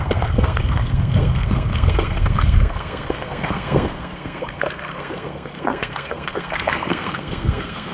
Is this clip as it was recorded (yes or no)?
no